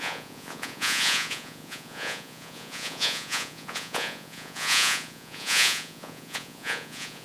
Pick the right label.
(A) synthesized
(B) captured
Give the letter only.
A